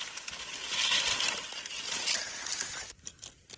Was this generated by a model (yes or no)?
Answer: no